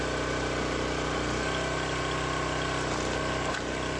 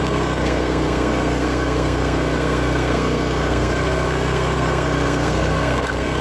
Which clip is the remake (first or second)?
second